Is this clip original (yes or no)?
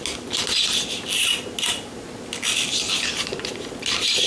yes